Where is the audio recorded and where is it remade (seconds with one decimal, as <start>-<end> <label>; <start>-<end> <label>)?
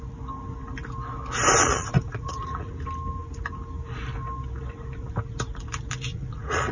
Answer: 0.0-1.6 recorded; 1.6-2.7 remade; 2.7-6.1 recorded; 6.1-6.7 remade